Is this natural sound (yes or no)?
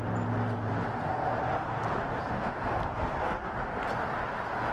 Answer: yes